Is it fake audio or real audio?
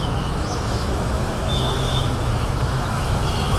fake